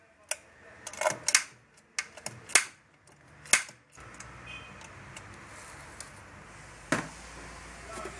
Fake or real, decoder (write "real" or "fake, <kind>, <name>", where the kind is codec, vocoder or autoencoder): real